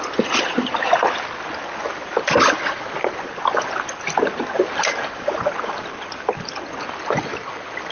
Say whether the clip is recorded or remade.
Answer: recorded